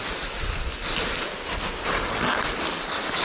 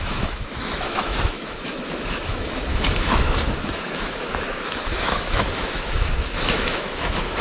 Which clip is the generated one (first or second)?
second